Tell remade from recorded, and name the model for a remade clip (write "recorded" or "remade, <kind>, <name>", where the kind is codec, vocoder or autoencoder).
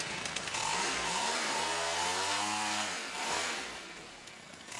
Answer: remade, codec, SNAC